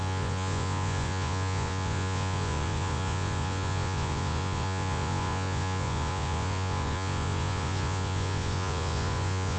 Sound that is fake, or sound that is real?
fake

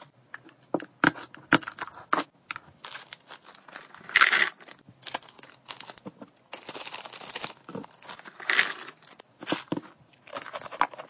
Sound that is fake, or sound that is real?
real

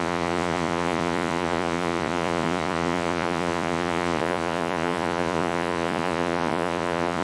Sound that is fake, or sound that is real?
fake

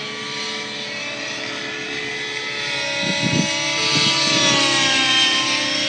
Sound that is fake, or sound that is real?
real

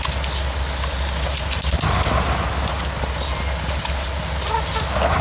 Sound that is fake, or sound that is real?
real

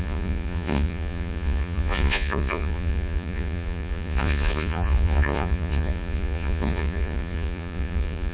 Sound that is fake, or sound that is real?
fake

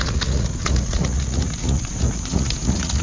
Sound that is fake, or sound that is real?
fake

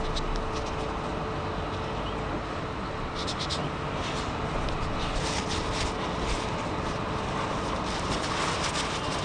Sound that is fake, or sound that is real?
real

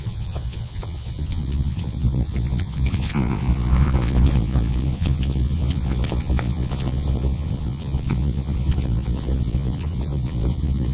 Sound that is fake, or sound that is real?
fake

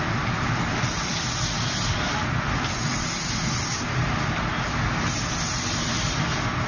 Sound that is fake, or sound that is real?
real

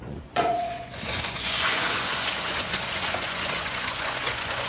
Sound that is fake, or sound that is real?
fake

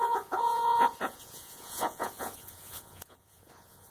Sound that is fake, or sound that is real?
fake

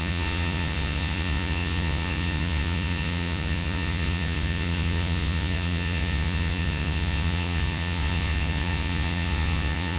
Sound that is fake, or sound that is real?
fake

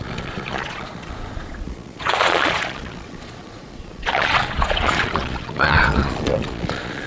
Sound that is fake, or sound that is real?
fake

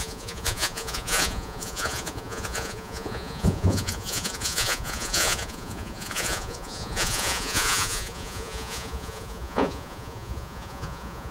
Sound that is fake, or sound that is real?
fake